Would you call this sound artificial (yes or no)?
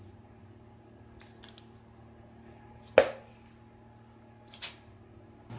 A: no